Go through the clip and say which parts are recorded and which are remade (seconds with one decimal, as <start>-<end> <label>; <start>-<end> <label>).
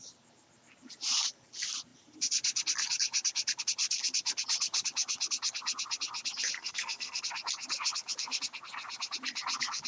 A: 0.0-6.6 recorded; 6.6-7.2 remade; 7.2-9.9 recorded